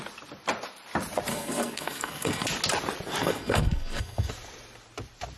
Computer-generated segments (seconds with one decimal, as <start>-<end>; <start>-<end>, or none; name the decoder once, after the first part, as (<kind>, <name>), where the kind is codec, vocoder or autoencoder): 1.3-2.5 (codec, SNAC); 3.2-4.3